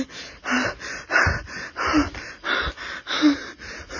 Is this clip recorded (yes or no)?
yes